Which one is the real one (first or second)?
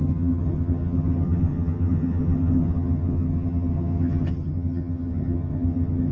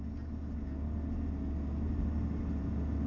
second